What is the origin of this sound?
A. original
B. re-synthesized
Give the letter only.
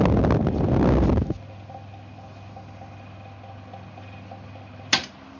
A